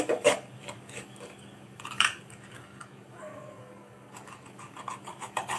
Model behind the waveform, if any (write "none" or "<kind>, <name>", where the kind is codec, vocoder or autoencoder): codec, DAC